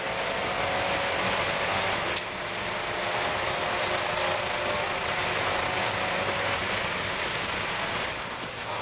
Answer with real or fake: real